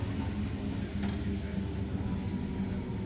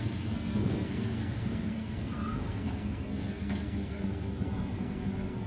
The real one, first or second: first